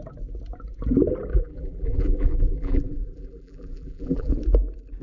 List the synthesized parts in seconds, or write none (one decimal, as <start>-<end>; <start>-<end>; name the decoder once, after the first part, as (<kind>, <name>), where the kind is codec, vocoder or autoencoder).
1.3-4.3 (vocoder, BigVGAN v2)